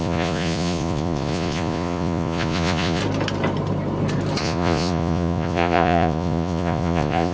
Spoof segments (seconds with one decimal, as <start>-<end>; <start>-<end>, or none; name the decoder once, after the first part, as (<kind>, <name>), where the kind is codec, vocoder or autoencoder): 0.0-3.0 (vocoder, Vocos); 4.4-7.3